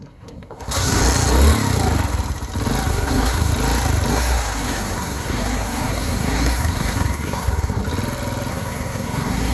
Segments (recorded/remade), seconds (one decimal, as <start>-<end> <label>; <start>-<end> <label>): 0.0-1.0 remade; 1.0-2.9 recorded; 2.9-3.5 remade; 3.5-4.1 recorded; 4.1-7.8 remade; 7.8-8.5 recorded; 8.5-9.5 remade